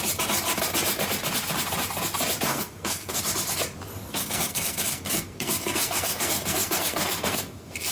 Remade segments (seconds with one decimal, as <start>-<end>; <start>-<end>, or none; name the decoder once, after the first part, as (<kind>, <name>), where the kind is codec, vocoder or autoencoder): 2.5-3.2 (codec, SNAC); 4.0-7.9